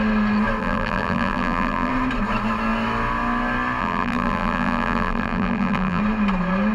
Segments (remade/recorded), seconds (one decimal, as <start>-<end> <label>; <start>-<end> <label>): 0.0-0.6 recorded; 0.6-1.9 remade; 1.9-3.8 recorded; 3.8-6.0 remade; 6.0-6.7 recorded